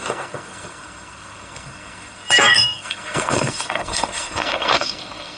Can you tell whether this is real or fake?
fake